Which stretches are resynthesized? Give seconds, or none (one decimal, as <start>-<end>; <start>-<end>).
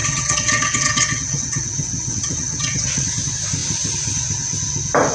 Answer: 0.0-3.1